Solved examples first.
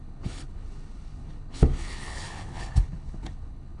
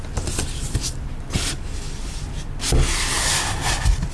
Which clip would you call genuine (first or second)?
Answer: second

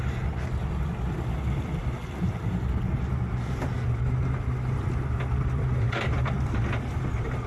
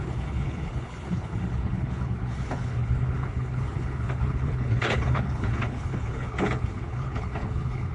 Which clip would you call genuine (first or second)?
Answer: first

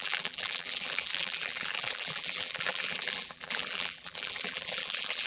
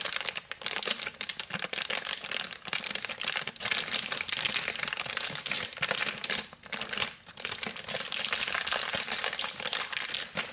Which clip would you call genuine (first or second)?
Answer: second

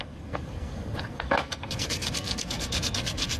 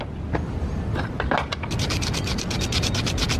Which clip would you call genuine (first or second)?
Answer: second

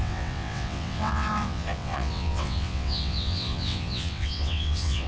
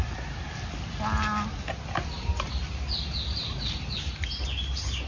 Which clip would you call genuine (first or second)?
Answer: second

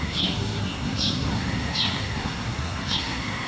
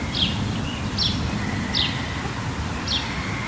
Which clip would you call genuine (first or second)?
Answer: second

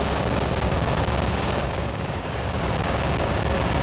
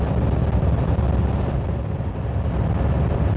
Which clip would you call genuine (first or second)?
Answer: second